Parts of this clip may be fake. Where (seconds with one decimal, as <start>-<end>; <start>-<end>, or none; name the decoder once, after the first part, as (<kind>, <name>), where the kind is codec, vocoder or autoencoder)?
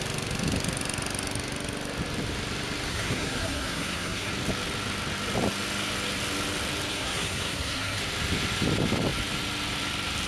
2.9-4.3 (codec, SNAC); 6.9-8.0